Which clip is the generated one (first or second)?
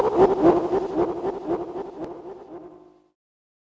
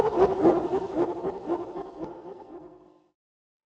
second